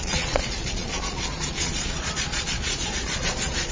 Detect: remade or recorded remade